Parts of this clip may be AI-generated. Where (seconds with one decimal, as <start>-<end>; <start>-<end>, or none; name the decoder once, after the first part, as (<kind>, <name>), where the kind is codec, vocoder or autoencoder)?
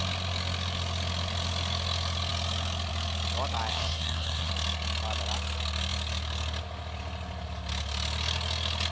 3.7-4.5 (codec, SNAC)